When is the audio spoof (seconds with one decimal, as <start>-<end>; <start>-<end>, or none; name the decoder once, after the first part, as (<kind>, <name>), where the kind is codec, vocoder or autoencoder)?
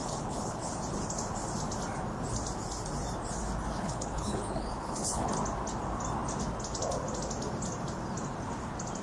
0.0-0.7 (codec, HILCodec); 3.8-5.3